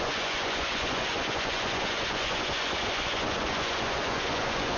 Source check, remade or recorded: remade